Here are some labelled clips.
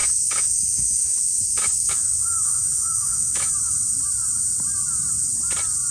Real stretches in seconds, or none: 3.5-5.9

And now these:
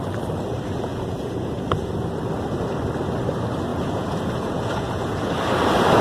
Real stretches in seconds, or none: 0.0-0.9; 1.6-3.7; 5.3-6.0

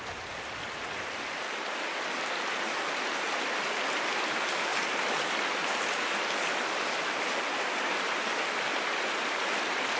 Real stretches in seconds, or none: 0.0-10.0

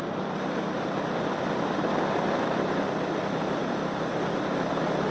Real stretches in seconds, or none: 0.0-5.1

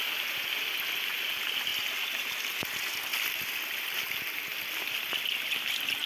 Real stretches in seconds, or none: 0.0-6.1